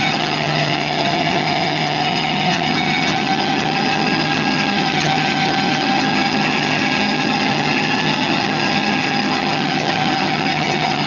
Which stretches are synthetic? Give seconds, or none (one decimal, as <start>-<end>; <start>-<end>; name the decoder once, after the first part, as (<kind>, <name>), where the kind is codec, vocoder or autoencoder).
0.0-11.1 (vocoder, HiFi-GAN)